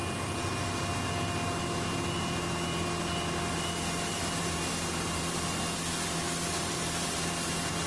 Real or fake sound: real